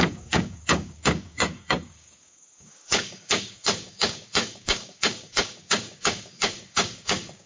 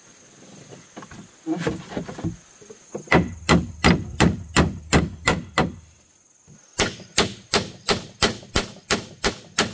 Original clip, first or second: second